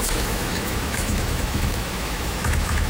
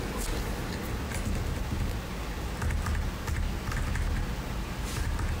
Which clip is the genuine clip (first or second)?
second